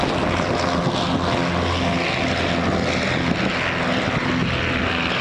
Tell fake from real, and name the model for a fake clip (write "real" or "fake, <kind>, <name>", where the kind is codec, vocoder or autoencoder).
real